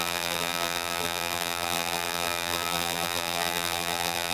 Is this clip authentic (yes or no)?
no